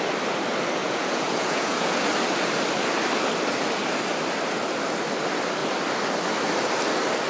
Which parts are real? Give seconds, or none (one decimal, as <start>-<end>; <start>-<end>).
0.0-0.8; 2.1-7.3